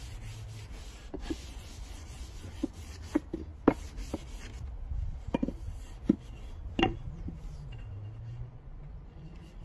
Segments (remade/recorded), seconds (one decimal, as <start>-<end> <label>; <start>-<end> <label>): 0.0-1.2 recorded; 1.2-3.1 remade; 3.1-8.3 recorded; 8.3-9.6 remade